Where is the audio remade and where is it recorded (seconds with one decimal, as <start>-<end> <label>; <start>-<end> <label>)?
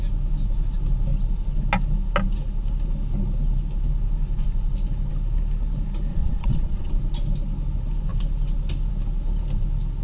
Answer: 0.0-6.1 recorded; 6.1-6.9 remade; 6.9-10.0 recorded